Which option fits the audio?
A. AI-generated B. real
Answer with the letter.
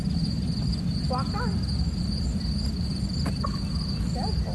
B